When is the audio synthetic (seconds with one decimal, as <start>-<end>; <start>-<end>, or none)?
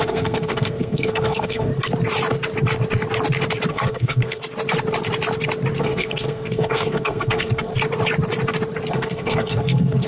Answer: 0.0-1.7; 3.7-4.4; 5.8-7.7; 8.9-10.1